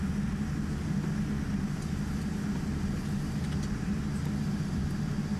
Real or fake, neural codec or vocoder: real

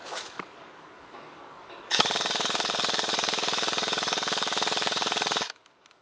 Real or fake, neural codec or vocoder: fake, codec, DAC